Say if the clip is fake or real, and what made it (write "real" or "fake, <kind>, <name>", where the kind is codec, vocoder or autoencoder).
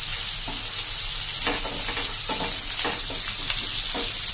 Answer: real